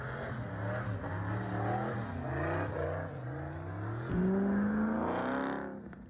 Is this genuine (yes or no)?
yes